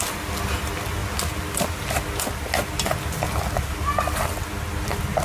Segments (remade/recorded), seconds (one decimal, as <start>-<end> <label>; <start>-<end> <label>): 0.0-5.2 recorded